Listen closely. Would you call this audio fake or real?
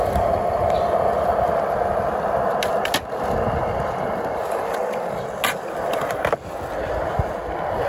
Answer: real